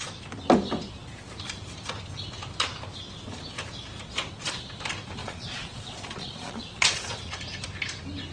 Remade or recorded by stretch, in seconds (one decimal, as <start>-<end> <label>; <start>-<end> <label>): 0.0-5.2 recorded; 5.2-7.4 remade; 7.4-8.3 recorded